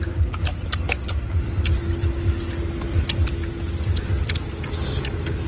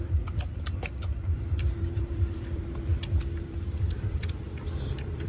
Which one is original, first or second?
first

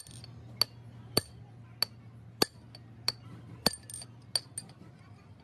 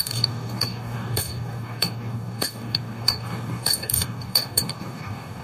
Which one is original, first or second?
first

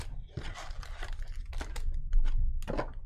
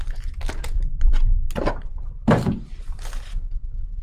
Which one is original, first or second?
first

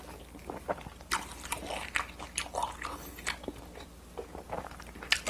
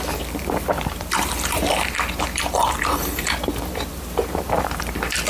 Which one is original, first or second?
first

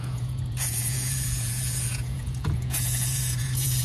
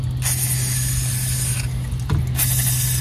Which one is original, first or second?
second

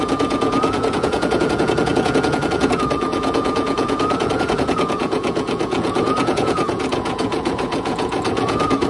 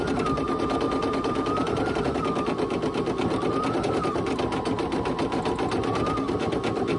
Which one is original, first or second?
second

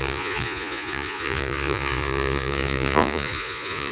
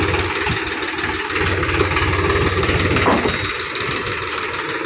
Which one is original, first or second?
second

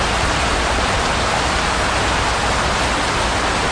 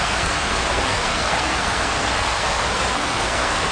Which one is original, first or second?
first